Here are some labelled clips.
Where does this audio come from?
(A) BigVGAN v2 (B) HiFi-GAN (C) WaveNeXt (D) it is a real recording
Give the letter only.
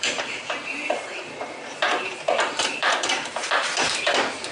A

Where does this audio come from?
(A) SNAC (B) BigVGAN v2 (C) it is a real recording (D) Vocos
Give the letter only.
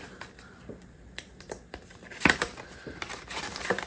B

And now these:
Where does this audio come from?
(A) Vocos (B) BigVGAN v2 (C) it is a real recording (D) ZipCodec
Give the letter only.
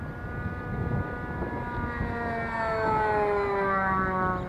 C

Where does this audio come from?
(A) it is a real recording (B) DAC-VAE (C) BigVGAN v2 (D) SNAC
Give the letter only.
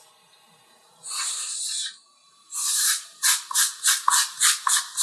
C